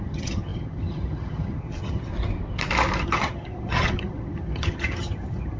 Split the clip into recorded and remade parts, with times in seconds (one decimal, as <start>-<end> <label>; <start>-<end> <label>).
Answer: 0.0-2.1 remade; 2.1-3.0 recorded; 3.0-5.6 remade